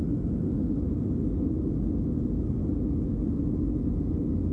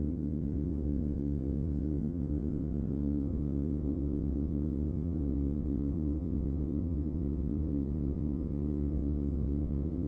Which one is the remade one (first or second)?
second